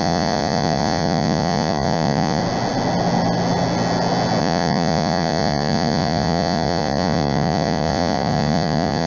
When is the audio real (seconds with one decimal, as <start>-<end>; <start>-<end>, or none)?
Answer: 2.4-4.4